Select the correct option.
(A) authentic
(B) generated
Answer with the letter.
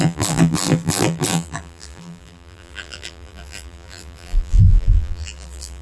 B